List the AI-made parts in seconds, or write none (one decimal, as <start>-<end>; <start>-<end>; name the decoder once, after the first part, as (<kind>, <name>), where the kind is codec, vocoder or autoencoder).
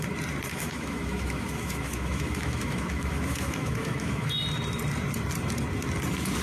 0.5-4.3 (autoencoder, DAC-VAE)